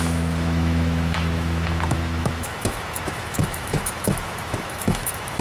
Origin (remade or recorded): remade